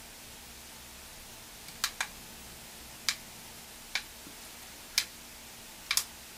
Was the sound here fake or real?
real